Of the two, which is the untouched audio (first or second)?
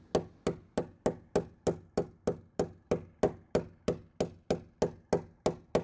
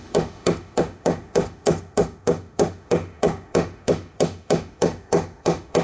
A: first